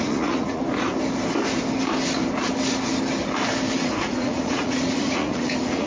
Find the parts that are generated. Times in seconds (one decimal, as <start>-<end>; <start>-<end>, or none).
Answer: 0.0-0.6; 3.8-5.9